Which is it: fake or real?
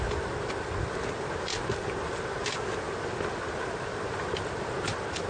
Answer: real